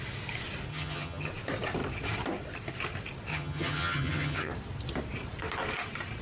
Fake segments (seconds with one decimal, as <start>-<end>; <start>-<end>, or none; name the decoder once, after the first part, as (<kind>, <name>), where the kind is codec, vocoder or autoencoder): 0.7-1.3 (vocoder, HiFi-GAN); 3.3-4.5